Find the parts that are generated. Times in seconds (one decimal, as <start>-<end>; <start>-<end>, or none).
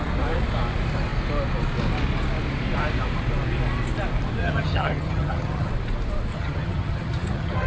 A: 4.4-5.7; 6.3-7.7